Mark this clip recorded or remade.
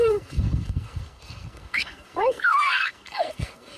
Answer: remade